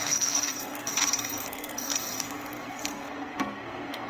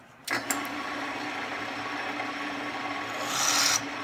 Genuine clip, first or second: second